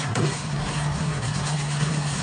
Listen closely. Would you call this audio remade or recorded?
remade